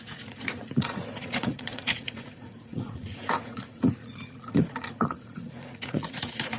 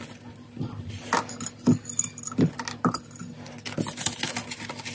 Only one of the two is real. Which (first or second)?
second